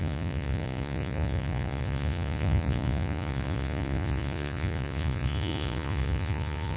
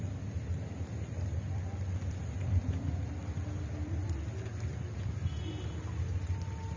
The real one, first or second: second